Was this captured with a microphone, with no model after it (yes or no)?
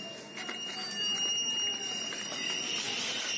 yes